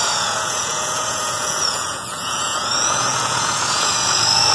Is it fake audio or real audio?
fake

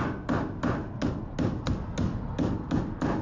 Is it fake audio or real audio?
real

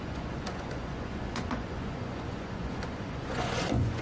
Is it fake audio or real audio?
fake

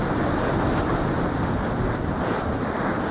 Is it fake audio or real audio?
real